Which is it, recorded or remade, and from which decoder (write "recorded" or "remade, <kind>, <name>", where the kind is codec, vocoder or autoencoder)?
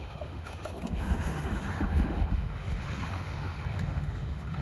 remade, autoencoder, DAC-VAE